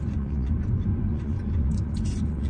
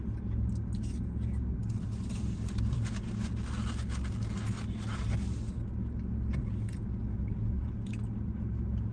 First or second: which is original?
second